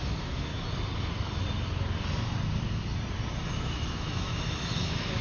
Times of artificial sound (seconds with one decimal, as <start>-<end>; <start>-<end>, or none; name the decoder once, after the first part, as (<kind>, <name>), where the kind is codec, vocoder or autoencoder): 0.0-0.5 (autoencoder, DAC-VAE); 3.6-5.2